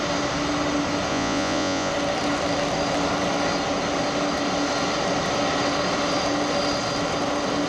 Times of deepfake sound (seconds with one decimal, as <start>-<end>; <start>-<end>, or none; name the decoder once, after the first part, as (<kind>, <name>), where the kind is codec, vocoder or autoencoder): 1.1-1.9 (vocoder, Vocos)